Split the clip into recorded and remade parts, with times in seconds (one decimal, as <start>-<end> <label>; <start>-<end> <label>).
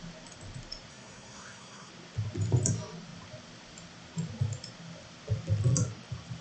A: 0.0-0.9 recorded; 0.9-1.9 remade; 1.9-6.4 recorded